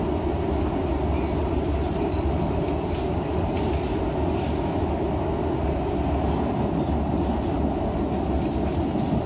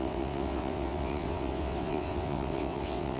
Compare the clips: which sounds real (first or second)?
first